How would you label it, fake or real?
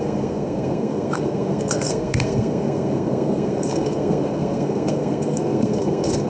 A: fake